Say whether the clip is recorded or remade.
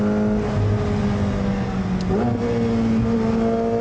recorded